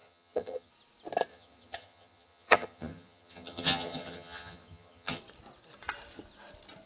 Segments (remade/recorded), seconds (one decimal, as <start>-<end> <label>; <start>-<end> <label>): 0.0-0.7 remade; 0.7-1.3 recorded; 1.3-5.2 remade; 5.2-6.9 recorded